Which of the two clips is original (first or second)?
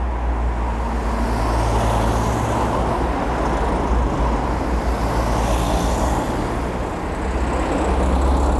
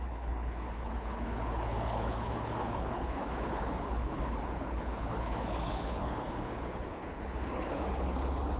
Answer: first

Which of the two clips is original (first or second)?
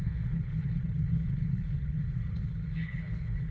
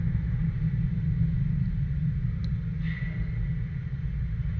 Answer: second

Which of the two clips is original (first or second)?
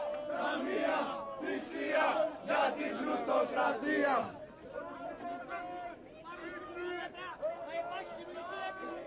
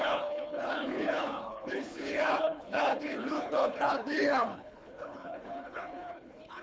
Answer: first